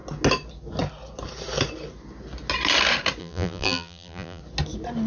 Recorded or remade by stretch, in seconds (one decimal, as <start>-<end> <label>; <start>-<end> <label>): 0.0-3.2 recorded; 3.2-4.4 remade; 4.4-5.1 recorded